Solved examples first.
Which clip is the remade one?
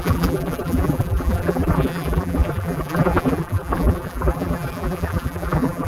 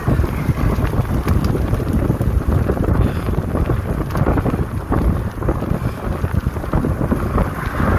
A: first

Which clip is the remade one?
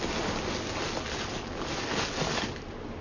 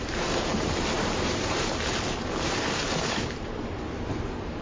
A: second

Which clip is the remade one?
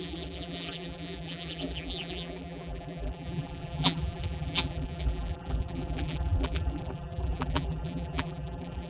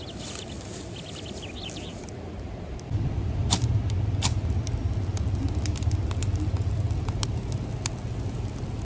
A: first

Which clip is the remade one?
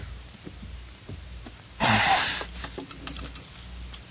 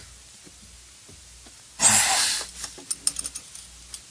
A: first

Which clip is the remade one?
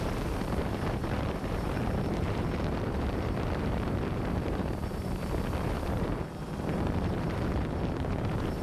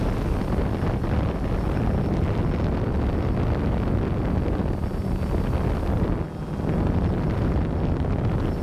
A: first